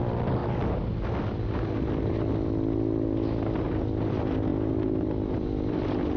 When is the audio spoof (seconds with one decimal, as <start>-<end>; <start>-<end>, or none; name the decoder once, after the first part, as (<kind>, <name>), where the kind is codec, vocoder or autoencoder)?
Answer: none